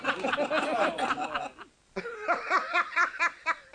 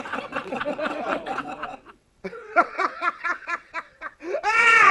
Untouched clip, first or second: first